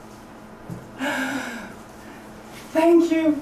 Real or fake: fake